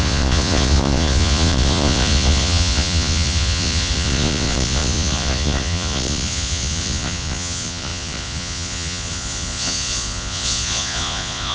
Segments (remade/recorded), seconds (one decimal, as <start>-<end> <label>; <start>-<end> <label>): 0.0-11.5 remade